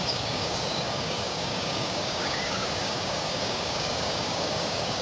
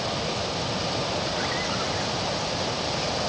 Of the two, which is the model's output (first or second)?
first